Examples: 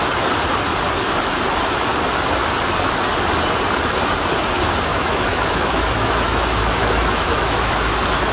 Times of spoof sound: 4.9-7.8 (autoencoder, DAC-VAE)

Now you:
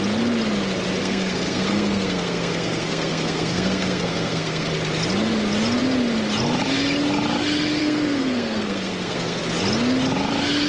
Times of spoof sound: 1.0-4.7 (codec, SNAC); 7.8-9.4

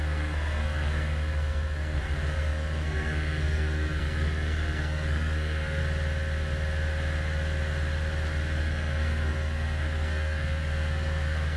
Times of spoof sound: 0.0-5.8 (codec, SNAC); 8.6-11.6